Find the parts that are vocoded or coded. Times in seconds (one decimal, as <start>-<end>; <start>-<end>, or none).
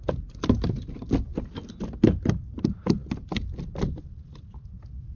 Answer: none